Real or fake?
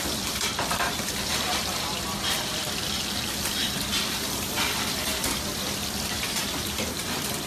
fake